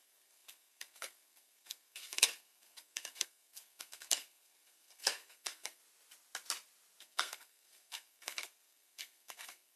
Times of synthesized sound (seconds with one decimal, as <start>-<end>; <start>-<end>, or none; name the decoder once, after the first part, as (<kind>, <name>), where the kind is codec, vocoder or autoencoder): 0.0-5.8 (codec, SNAC); 7.0-9.8